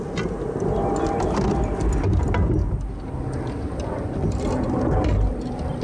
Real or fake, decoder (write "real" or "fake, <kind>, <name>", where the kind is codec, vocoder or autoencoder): real